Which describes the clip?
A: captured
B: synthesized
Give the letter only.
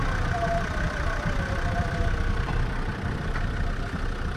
B